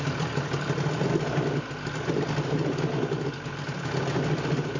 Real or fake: real